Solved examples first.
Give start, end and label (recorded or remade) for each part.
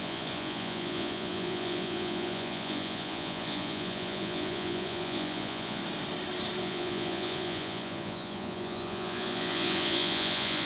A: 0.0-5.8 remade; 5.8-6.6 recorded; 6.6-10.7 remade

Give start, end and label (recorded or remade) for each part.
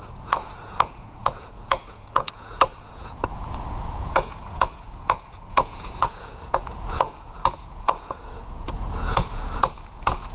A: 0.0-10.3 remade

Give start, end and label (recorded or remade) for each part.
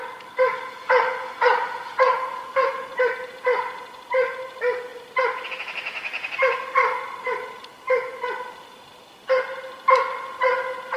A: 0.0-11.0 recorded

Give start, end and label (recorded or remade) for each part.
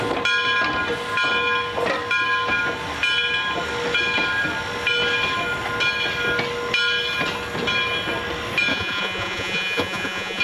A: 0.0-8.7 recorded; 8.7-10.4 remade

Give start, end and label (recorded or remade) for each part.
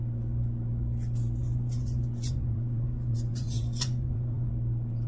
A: 0.0-1.4 recorded; 1.4-4.5 remade; 4.5-5.1 recorded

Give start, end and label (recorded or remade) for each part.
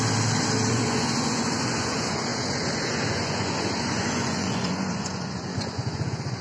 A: 0.0-0.7 recorded; 0.7-6.4 remade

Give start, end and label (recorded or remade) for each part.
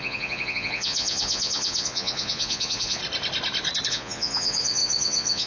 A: 0.0-3.0 remade; 3.0-3.9 recorded; 3.9-5.5 remade